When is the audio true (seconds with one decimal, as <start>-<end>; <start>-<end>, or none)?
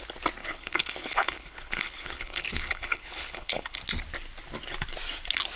0.0-0.4; 3.8-5.6